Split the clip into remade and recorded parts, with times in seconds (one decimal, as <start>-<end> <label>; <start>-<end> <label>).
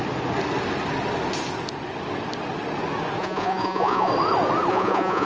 0.0-3.2 recorded; 3.2-4.1 remade; 4.1-4.7 recorded; 4.7-5.3 remade